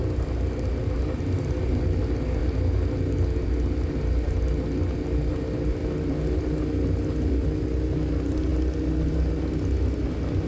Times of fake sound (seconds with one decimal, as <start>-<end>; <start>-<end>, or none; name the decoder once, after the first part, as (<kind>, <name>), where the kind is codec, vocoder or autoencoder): none